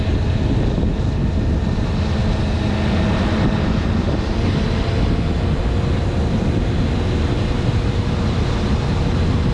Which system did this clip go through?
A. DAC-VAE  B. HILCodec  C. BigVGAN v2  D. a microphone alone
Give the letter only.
D